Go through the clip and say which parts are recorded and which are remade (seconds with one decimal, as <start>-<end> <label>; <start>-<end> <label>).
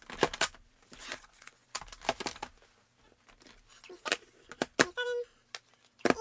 0.0-1.0 recorded; 1.0-1.8 remade; 1.8-6.2 recorded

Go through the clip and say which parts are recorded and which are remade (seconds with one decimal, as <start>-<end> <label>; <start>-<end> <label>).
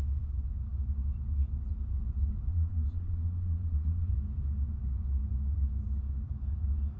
0.0-2.5 recorded; 2.5-4.1 remade; 4.1-7.0 recorded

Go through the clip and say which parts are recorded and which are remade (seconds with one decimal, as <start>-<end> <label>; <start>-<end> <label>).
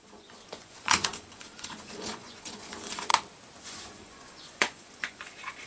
0.0-3.1 remade; 3.1-3.6 recorded; 3.6-5.7 remade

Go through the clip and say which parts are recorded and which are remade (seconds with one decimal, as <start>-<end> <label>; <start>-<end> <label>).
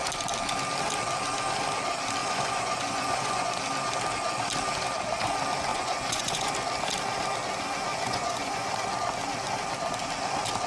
0.0-2.2 recorded; 2.2-3.5 remade; 3.5-5.7 recorded; 5.7-6.5 remade; 6.5-7.9 recorded; 7.9-8.7 remade; 8.7-10.7 recorded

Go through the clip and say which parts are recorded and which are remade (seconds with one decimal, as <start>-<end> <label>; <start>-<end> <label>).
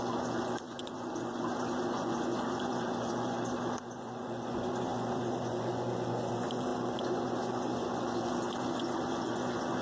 0.0-9.8 remade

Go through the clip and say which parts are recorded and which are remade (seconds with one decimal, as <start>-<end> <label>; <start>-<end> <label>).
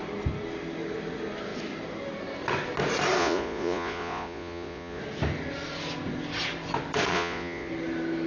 0.0-3.2 recorded; 3.2-5.0 remade; 5.0-7.1 recorded; 7.1-7.7 remade; 7.7-8.3 recorded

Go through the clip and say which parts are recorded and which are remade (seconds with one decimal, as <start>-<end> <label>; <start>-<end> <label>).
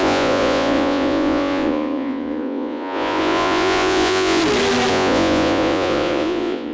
0.0-4.4 remade; 4.4-4.9 recorded; 4.9-6.7 remade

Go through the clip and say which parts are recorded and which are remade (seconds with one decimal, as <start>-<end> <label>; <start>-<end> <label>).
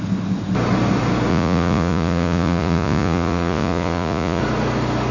0.0-1.3 recorded; 1.3-4.4 remade; 4.4-5.1 recorded